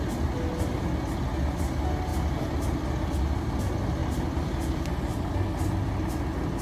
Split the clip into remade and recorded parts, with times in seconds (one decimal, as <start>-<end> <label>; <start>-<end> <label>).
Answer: 0.0-2.1 recorded; 2.1-3.2 remade; 3.2-4.0 recorded; 4.0-5.3 remade; 5.3-6.6 recorded